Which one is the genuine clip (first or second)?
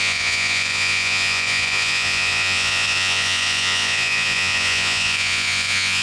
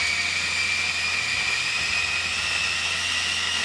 second